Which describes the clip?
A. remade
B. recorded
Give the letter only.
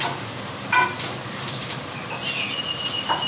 B